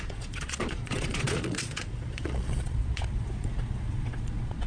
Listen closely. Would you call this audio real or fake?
fake